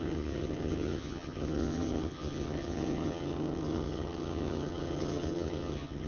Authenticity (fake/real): fake